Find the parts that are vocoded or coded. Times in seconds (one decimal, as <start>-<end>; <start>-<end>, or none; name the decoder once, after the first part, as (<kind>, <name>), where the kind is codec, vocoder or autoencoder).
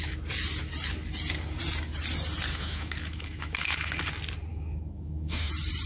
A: 2.5-4.1 (autoencoder, DAC-VAE); 4.5-5.5